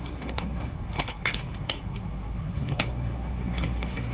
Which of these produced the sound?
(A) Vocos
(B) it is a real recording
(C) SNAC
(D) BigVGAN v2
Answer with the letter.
C